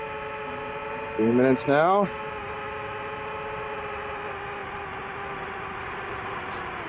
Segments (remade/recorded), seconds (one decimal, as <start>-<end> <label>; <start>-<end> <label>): 0.0-4.6 recorded; 4.6-6.9 remade